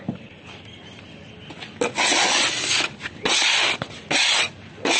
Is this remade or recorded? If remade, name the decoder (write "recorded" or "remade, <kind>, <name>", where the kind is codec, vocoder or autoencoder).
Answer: recorded